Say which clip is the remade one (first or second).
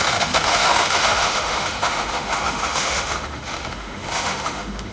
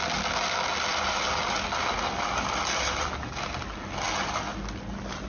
first